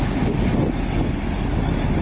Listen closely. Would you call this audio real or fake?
real